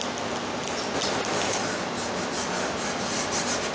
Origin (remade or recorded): recorded